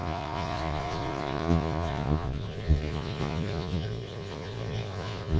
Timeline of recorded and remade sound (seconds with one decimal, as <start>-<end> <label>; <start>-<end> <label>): 0.0-5.4 remade